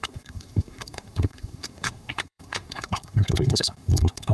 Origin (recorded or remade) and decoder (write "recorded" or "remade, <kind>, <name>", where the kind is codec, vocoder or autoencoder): remade, codec, SNAC